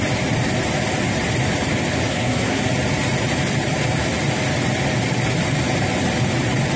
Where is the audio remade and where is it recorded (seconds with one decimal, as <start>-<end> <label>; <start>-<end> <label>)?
0.0-2.1 recorded; 2.1-2.6 remade; 2.6-6.8 recorded